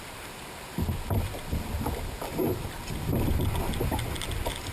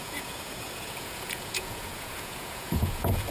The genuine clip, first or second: first